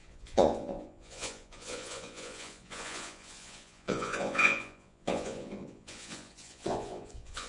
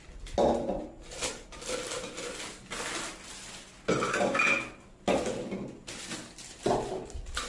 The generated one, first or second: first